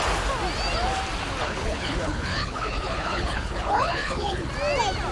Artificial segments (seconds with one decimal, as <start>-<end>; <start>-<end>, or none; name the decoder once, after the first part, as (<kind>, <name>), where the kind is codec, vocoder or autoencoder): 1.4-4.5 (codec, HILCodec)